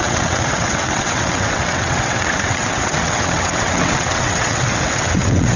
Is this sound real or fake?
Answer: fake